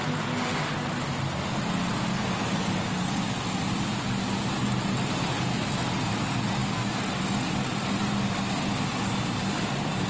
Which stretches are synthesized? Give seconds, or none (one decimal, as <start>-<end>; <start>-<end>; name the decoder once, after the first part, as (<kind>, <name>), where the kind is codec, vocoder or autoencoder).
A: none